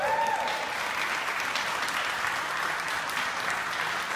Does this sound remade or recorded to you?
recorded